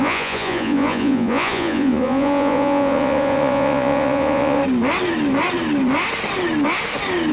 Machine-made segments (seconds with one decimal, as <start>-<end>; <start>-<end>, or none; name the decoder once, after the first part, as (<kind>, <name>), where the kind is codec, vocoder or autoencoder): 0.0-4.6 (vocoder, Vocos)